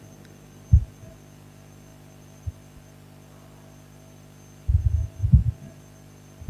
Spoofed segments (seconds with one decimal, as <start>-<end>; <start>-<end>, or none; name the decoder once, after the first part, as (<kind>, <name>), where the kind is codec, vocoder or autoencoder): none